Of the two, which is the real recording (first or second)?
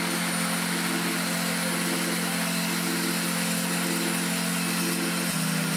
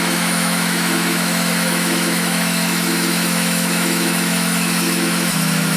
first